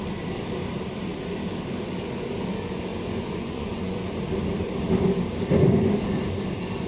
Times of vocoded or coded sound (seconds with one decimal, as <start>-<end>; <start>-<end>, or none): 2.9-4.2